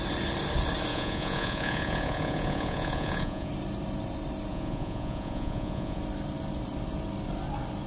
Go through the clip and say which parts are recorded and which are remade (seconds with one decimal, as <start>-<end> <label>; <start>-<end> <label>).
0.0-0.9 recorded; 0.9-3.5 remade; 3.5-4.5 recorded; 4.5-6.0 remade; 6.0-7.9 recorded